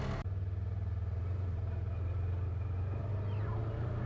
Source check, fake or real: real